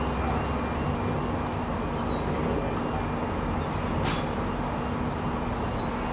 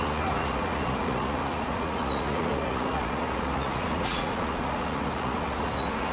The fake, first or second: second